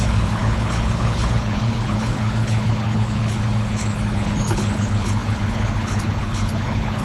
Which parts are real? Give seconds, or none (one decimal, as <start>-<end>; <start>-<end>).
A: none